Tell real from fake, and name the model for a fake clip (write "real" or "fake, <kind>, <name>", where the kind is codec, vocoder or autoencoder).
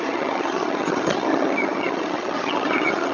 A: fake, vocoder, HiFi-GAN